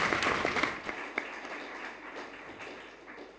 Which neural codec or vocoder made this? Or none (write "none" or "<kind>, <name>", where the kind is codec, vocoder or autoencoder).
none